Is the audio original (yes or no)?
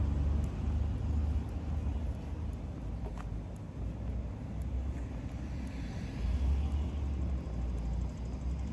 yes